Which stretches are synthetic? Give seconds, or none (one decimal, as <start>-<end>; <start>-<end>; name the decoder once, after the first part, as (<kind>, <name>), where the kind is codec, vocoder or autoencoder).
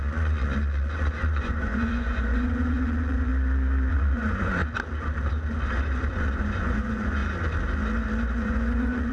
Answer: 0.0-3.3 (vocoder, Vocos); 3.9-4.6; 6.1-7.2; 8.4-9.1